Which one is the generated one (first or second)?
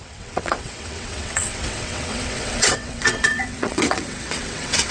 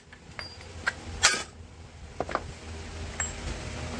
first